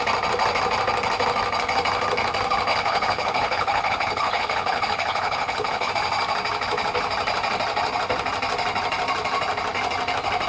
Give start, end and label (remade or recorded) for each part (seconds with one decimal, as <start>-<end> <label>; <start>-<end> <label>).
0.0-2.7 recorded; 2.7-5.9 remade; 5.9-10.5 recorded